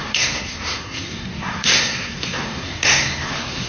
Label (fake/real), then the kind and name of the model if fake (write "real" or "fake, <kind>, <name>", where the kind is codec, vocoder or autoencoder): fake, codec, SNAC